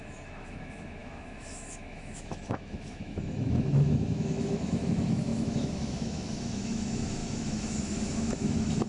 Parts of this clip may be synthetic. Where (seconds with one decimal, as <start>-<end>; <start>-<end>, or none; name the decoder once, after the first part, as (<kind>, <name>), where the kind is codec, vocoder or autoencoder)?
0.0-8.9 (autoencoder, DAC-VAE)